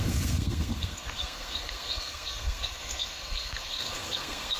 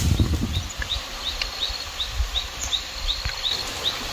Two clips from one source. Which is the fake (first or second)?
first